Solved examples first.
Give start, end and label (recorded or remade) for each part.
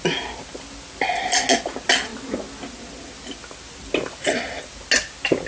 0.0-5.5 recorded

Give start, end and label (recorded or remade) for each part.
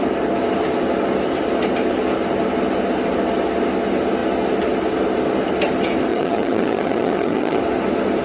0.0-6.1 recorded; 6.1-7.6 remade; 7.6-8.2 recorded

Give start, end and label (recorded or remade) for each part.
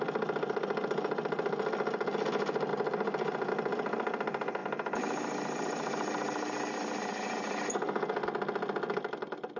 0.0-9.6 recorded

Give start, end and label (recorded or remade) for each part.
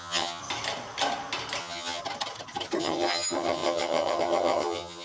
0.0-0.4 remade; 0.4-1.6 recorded; 1.6-2.0 remade; 2.0-2.8 recorded; 2.8-5.0 remade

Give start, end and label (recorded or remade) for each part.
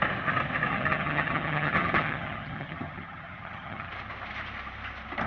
0.0-0.7 recorded; 0.7-3.9 remade; 3.9-5.3 recorded